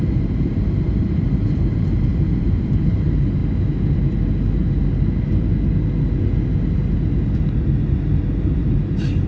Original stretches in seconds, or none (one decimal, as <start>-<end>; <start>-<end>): 3.4-8.5